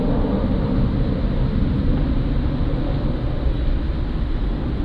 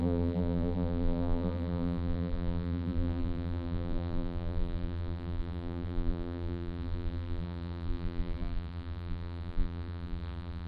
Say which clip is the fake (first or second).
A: second